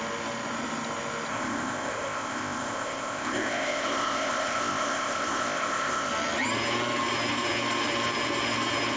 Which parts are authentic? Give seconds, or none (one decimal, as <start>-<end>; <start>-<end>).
0.0-1.3; 6.1-9.0